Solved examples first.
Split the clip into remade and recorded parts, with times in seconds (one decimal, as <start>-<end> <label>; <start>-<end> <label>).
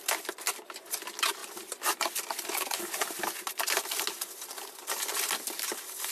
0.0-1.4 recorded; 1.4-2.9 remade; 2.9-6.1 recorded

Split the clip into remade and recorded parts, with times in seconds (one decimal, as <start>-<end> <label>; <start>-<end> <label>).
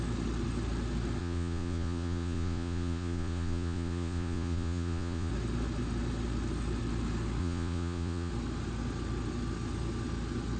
0.0-1.2 recorded; 1.2-5.3 remade; 5.3-7.4 recorded; 7.4-8.3 remade; 8.3-10.6 recorded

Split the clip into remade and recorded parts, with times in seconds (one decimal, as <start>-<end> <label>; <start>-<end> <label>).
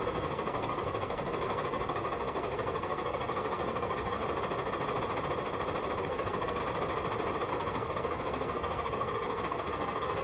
0.0-4.2 remade; 4.2-6.0 recorded; 6.0-6.6 remade; 6.6-7.5 recorded; 7.5-10.2 remade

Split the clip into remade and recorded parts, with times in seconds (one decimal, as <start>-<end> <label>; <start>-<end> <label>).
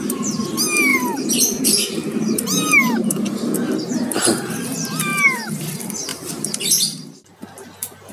0.0-0.9 recorded; 0.9-1.6 remade; 1.6-2.0 recorded; 2.0-3.1 remade; 3.1-6.1 recorded; 6.1-7.0 remade; 7.0-8.1 recorded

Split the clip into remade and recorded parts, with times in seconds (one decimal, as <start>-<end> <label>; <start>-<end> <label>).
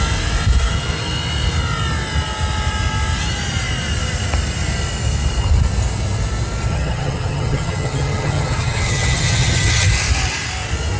0.0-6.7 recorded; 6.7-9.9 remade; 9.9-11.0 recorded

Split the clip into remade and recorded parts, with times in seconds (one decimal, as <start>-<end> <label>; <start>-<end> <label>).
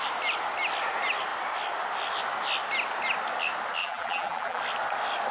0.0-3.8 recorded; 3.8-4.6 remade; 4.6-5.3 recorded